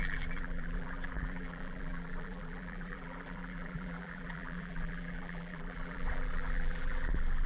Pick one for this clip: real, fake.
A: fake